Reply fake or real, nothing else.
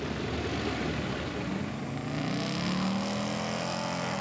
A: real